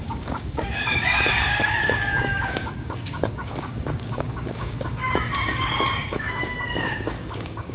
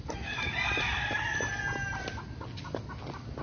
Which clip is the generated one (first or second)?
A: first